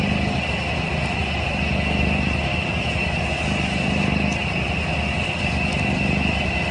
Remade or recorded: recorded